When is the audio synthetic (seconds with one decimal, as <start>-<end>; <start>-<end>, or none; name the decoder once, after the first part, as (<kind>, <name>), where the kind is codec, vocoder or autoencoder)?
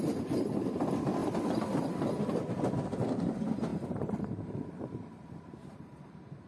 3.7-6.5 (vocoder, BigVGAN v2)